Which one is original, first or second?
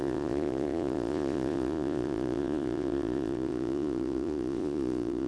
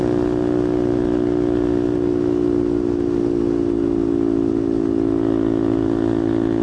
second